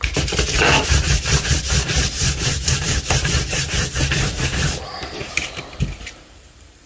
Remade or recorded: remade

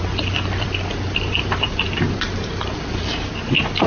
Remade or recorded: recorded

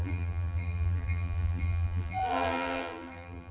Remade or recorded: remade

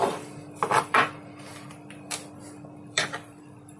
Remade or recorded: remade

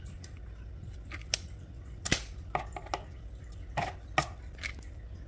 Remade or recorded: recorded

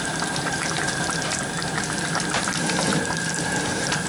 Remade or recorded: remade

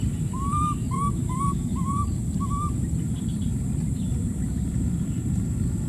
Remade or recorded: remade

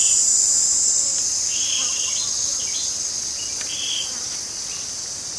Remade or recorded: recorded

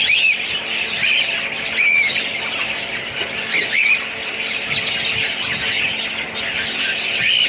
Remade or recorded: recorded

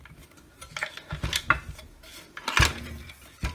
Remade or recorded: recorded